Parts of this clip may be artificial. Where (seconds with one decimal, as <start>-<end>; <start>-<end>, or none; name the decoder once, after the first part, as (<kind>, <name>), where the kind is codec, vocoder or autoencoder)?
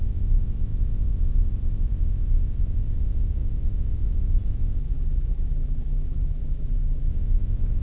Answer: 4.8-7.1 (vocoder, BigVGAN v2)